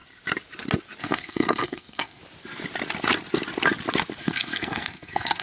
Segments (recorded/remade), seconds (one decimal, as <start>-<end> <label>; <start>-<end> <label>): 0.0-1.0 recorded; 1.0-2.2 remade; 2.2-4.2 recorded; 4.2-5.4 remade